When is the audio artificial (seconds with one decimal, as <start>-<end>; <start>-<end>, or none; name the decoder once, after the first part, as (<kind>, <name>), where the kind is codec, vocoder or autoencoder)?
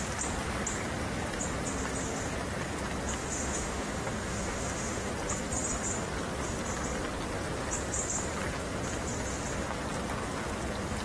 3.2-5.1 (autoencoder, DAC-VAE)